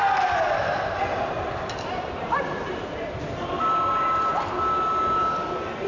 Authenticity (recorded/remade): recorded